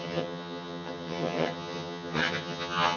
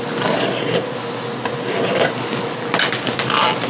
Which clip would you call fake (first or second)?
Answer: first